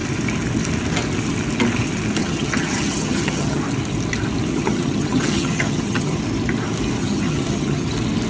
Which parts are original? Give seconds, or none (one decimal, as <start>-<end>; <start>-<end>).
0.0-2.2; 3.6-4.5; 6.2-7.0; 7.9-8.3